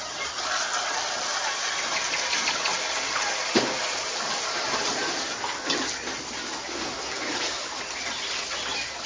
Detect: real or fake real